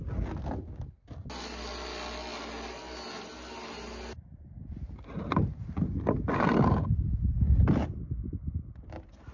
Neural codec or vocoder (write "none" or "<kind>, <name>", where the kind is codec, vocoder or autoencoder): none